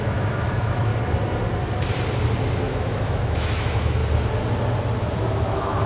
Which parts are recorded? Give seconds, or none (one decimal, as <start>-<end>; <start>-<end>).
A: 0.9-2.6; 4.0-5.3

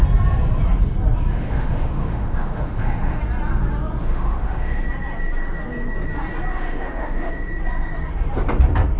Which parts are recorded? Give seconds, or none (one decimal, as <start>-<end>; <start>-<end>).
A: 0.0-1.3; 3.2-4.0; 4.8-6.5; 7.3-9.0

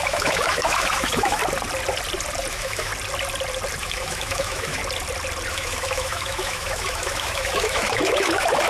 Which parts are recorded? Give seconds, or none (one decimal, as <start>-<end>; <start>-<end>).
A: 1.4-2.5; 2.9-3.8; 4.8-5.5

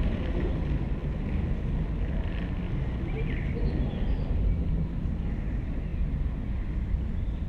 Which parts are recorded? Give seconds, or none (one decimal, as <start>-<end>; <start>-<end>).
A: 0.0-7.5